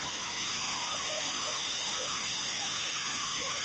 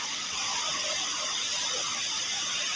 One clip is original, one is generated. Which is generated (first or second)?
first